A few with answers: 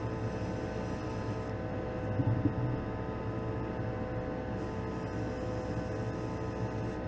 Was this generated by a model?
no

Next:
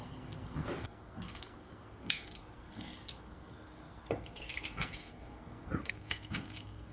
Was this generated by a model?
yes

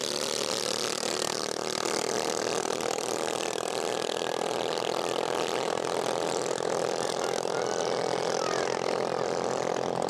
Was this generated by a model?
no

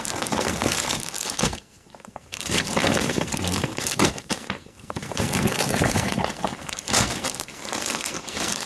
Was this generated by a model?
yes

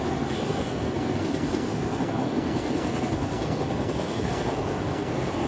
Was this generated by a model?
yes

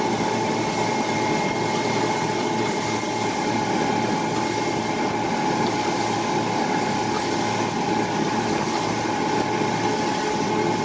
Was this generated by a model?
no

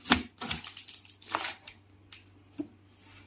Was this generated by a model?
no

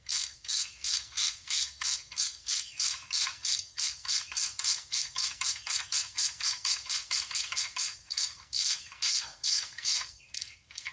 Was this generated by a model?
yes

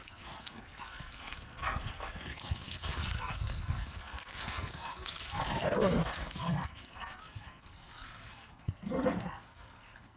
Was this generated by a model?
yes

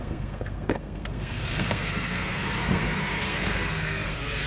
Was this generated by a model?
yes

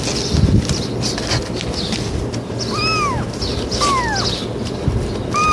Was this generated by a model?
no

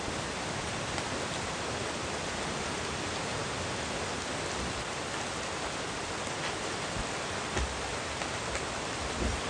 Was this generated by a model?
no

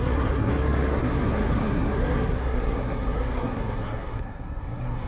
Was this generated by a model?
yes